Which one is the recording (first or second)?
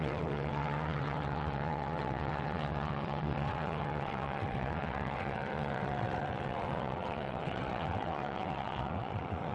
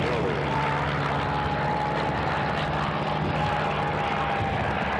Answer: second